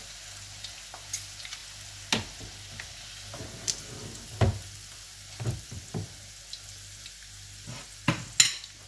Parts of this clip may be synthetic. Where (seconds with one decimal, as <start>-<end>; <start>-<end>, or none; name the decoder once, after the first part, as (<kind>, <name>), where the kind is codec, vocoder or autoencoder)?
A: none